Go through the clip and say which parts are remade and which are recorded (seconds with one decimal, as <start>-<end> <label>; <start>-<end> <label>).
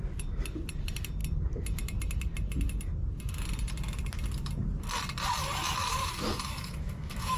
0.0-5.8 recorded; 5.8-7.4 remade